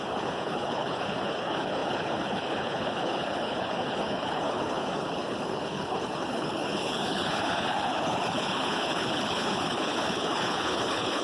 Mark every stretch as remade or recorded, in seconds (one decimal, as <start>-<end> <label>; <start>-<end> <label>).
0.0-11.2 remade